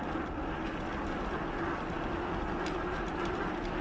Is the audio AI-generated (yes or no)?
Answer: no